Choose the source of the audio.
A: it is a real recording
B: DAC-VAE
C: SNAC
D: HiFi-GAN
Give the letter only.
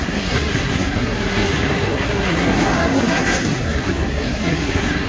C